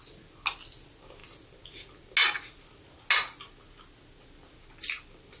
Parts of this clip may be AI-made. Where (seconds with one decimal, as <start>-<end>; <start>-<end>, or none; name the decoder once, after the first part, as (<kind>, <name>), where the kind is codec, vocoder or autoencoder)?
none